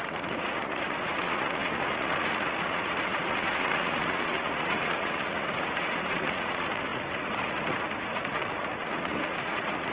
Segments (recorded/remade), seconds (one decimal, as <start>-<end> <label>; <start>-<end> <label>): 0.0-9.9 remade